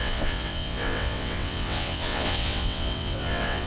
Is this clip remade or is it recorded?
remade